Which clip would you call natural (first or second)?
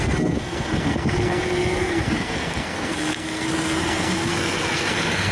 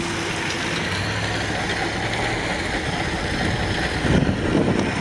second